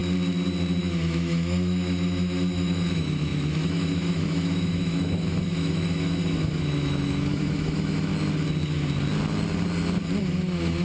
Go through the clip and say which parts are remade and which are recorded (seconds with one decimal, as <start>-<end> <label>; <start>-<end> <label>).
0.0-0.8 recorded; 0.8-8.1 remade; 8.1-10.2 recorded; 10.2-10.8 remade